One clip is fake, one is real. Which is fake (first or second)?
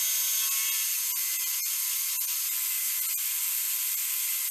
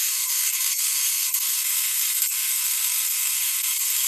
second